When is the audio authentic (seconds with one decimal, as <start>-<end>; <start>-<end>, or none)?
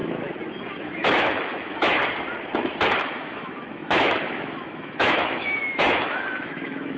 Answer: 0.0-0.8; 2.0-3.0